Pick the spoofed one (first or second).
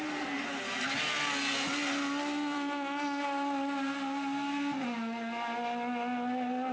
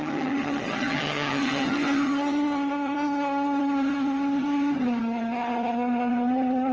second